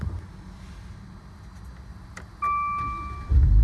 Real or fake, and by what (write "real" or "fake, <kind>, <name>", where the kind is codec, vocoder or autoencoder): real